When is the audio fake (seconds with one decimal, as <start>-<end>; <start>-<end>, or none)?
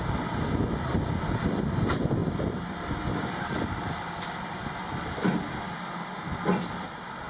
none